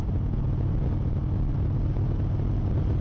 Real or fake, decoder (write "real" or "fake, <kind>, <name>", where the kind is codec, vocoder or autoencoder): real